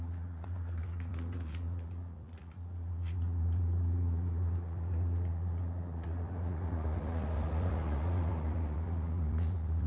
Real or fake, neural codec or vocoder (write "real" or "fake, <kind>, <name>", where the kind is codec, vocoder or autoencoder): fake, vocoder, Vocos